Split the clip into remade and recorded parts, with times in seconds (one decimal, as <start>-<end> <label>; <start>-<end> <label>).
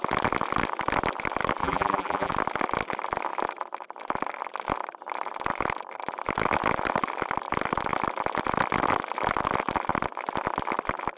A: 0.0-1.6 recorded; 1.6-2.3 remade; 2.3-11.2 recorded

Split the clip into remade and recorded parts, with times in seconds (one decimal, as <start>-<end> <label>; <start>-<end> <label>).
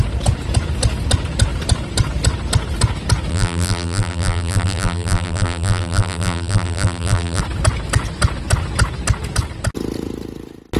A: 0.0-3.3 recorded; 3.3-7.4 remade; 7.4-10.8 recorded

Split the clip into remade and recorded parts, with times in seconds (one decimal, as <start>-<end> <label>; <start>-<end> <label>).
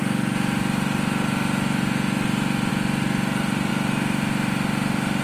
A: 0.0-5.2 recorded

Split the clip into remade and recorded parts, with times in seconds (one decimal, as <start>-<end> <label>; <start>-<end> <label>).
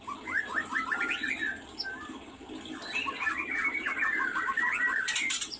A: 0.0-5.6 recorded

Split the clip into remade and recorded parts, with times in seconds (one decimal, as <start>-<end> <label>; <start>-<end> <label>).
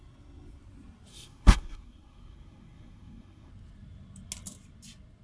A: 0.0-1.1 recorded; 1.1-3.5 remade; 3.5-5.2 recorded